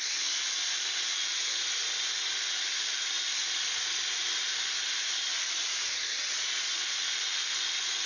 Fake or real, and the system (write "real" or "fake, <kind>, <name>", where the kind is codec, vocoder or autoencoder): real